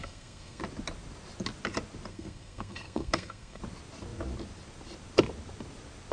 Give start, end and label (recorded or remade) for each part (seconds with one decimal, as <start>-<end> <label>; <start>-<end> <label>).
0.0-0.6 remade; 0.6-2.1 recorded; 2.1-3.6 remade; 3.6-6.1 recorded